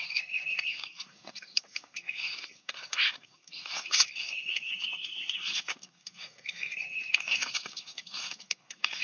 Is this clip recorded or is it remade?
remade